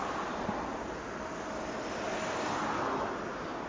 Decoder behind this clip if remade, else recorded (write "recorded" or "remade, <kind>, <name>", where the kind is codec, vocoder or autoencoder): recorded